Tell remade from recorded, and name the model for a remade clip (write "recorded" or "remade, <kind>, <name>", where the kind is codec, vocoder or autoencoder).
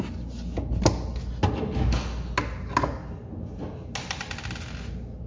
recorded